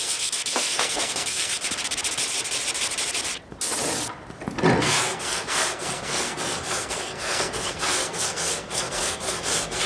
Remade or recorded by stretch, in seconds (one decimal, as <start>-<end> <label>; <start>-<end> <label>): 0.0-1.5 remade; 1.5-4.8 recorded; 4.8-9.9 remade